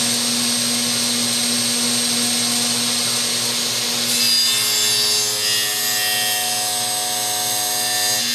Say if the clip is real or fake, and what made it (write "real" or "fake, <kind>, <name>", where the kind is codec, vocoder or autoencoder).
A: real